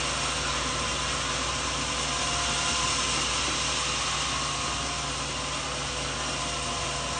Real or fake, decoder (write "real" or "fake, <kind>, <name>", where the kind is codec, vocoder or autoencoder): real